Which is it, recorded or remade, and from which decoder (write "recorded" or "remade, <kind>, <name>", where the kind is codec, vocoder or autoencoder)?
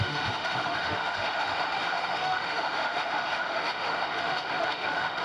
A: remade, autoencoder, DAC-VAE